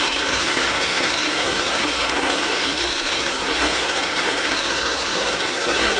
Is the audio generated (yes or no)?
yes